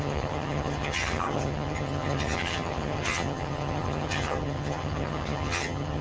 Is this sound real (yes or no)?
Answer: no